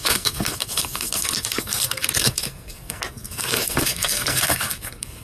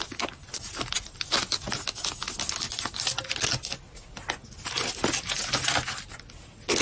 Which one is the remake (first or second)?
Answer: first